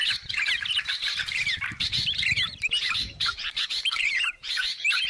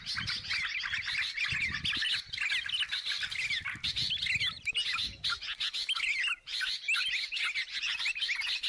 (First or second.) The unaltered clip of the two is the second